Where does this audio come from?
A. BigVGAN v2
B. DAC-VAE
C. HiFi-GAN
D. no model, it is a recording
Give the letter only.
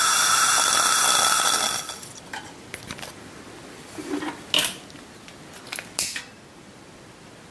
D